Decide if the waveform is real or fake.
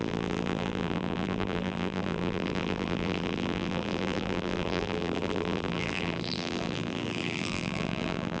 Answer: fake